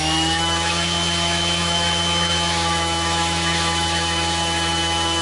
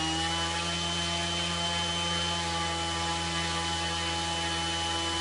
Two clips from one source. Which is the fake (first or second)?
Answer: first